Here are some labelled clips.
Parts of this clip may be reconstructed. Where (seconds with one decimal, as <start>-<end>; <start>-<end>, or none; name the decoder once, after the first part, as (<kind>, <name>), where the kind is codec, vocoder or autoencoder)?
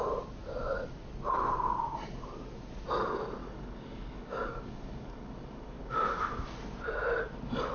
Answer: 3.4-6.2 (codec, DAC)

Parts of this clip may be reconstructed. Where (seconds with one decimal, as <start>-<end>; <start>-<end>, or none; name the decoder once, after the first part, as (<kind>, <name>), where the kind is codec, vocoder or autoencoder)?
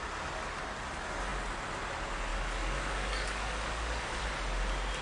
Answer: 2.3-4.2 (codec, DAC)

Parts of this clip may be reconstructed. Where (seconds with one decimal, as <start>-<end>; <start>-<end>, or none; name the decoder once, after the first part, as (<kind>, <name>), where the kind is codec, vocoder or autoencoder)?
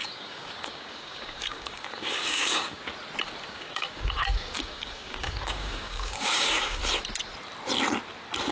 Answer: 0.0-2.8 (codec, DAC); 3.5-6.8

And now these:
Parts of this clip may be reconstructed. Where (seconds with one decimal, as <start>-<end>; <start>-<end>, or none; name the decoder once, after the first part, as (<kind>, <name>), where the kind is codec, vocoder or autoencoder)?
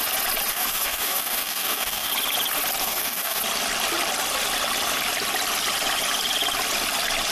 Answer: 0.5-2.1 (codec, DAC); 2.8-3.4